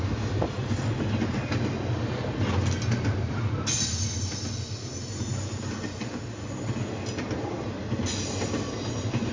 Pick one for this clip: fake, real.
real